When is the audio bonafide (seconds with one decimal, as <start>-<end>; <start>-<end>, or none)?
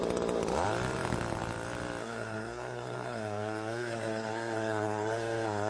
0.0-2.0